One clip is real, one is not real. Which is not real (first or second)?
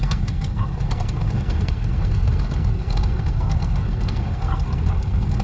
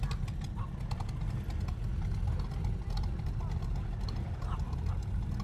first